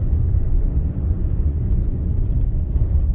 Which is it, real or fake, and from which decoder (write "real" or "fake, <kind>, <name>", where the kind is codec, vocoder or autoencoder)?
fake, vocoder, Vocos